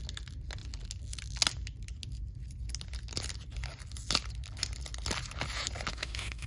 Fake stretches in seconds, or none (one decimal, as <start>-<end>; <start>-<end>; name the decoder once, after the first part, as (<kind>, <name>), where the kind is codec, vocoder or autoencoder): 5.9-6.5 (autoencoder, DAC-VAE)